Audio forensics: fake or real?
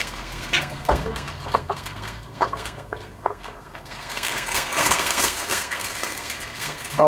fake